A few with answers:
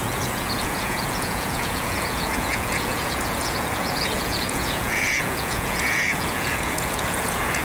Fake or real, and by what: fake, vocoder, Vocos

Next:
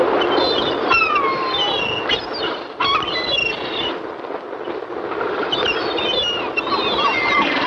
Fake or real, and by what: real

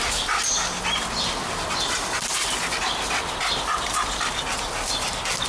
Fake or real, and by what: real